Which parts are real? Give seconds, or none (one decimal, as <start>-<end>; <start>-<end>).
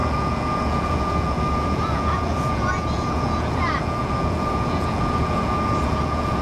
none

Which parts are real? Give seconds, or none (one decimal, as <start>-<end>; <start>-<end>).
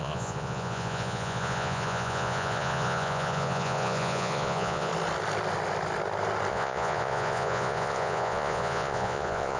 4.9-6.5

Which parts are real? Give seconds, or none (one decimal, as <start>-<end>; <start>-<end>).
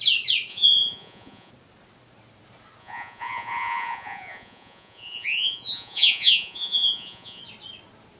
0.0-0.5; 1.5-2.8; 7.4-8.2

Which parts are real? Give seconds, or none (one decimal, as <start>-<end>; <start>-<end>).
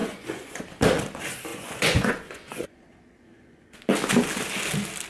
0.6-1.5; 3.8-5.1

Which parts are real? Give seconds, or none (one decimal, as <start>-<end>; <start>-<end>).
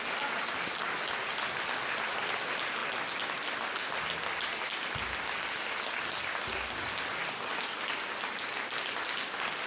0.0-9.7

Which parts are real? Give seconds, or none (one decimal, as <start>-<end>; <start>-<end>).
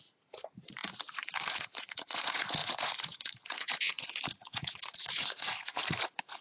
none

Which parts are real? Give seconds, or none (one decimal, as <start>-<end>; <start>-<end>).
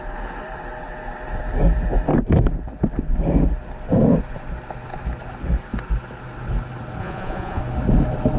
0.0-7.0; 7.6-8.4